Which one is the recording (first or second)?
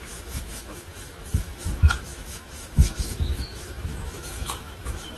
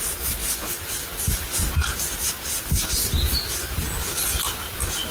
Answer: second